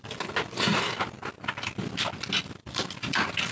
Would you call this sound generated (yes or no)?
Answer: no